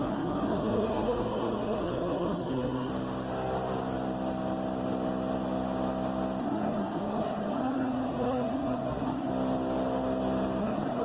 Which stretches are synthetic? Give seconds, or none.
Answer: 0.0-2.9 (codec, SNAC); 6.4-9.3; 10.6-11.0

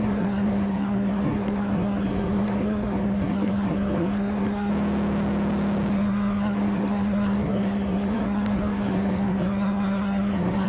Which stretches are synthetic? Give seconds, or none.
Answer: 0.0-4.7 (codec, SNAC); 5.9-10.7

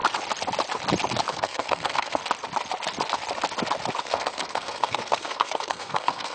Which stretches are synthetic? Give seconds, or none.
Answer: 1.3-2.2 (codec, SNAC); 4.0-6.3

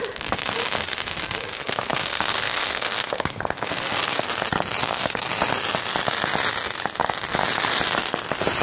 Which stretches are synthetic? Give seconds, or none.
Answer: 1.5-4.2 (codec, SNAC); 4.8-5.3